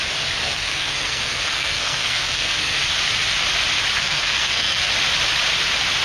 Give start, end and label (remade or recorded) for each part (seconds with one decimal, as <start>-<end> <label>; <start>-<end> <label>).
0.0-0.4 recorded; 0.4-2.8 remade; 2.8-4.0 recorded; 4.0-4.9 remade; 4.9-6.0 recorded